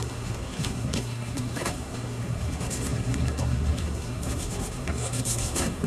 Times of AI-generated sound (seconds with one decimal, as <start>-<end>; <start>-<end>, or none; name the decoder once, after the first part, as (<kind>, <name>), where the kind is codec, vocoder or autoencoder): 0.0-5.9 (codec, SNAC)